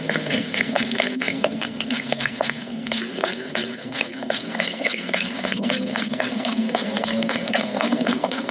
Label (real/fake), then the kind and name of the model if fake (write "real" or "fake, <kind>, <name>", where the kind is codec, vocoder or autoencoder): fake, codec, SNAC